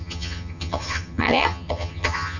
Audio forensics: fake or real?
fake